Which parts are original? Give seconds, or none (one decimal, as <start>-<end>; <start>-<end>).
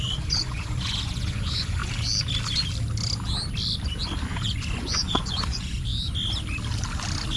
1.8-4.3; 5.9-7.4